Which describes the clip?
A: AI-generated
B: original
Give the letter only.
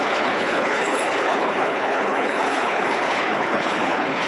A